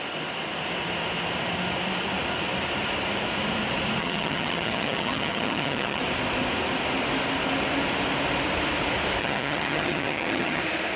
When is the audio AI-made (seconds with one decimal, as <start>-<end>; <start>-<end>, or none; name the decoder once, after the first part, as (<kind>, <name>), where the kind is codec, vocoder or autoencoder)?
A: 4.0-6.0 (vocoder, HiFi-GAN); 9.2-10.6

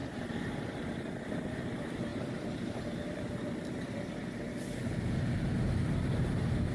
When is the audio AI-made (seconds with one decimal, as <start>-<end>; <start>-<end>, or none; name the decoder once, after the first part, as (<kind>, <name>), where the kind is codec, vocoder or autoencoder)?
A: 2.1-4.8 (vocoder, BigVGAN v2)

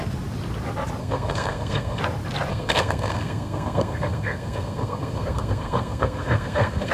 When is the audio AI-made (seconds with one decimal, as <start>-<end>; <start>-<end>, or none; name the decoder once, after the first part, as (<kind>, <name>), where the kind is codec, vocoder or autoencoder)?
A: 1.0-2.0 (codec, SNAC); 2.5-6.9

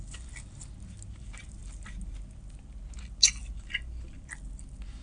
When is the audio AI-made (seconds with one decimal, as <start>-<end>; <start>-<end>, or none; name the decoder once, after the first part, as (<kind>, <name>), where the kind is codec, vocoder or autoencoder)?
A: none

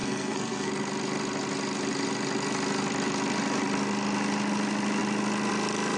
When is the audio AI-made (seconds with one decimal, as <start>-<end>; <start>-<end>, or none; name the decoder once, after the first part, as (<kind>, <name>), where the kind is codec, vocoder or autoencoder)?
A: 0.0-0.7 (codec, SNAC)

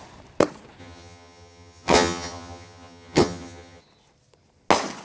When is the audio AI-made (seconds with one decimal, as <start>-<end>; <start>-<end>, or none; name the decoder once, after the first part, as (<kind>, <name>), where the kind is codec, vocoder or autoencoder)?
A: 0.8-3.8 (vocoder, HiFi-GAN)

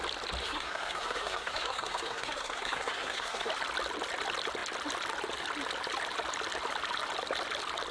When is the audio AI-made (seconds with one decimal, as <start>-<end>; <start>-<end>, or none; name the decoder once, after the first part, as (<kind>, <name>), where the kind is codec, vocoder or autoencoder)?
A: 0.4-3.5 (codec, SNAC)